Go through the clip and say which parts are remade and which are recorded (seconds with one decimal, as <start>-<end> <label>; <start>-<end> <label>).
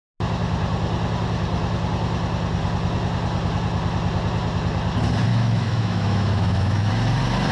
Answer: 0.0-5.3 recorded; 5.3-6.9 remade; 6.9-7.5 recorded